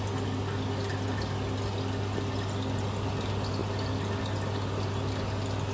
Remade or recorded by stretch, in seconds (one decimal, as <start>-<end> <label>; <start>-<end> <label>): 0.0-5.7 recorded